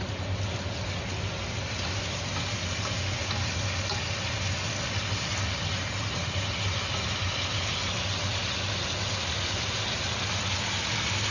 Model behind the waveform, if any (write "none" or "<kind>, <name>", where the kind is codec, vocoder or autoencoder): none